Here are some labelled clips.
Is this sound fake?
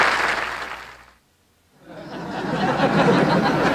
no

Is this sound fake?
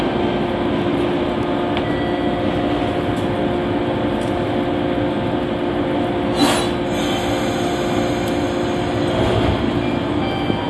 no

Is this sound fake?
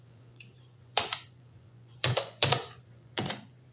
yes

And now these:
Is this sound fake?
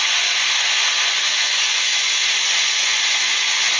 yes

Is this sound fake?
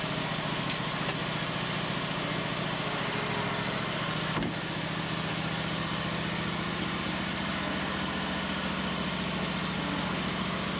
no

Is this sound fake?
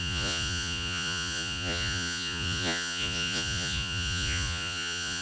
yes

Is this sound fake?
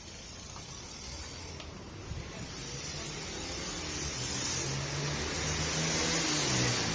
no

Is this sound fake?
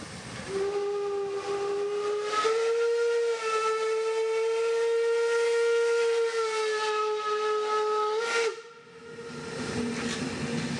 no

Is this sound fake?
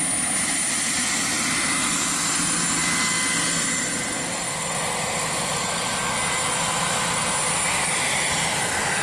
no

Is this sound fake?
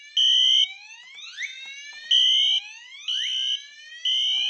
no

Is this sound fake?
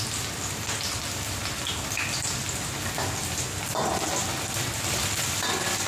no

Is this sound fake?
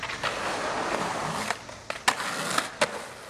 no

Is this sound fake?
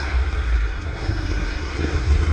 yes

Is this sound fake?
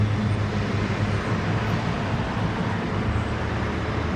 yes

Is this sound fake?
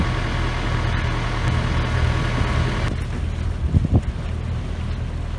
no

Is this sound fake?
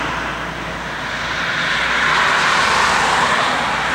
no